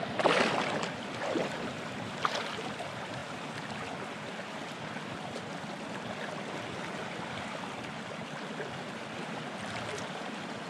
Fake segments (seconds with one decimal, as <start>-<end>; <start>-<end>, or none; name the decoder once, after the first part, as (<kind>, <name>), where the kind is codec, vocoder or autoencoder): none